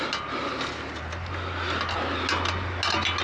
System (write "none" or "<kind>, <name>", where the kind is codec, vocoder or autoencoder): none